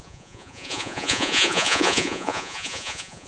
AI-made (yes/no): yes